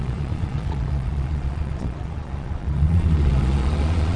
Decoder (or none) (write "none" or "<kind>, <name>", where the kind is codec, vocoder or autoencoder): vocoder, Vocos